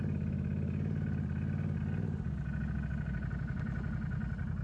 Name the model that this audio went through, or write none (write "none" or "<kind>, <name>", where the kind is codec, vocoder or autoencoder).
none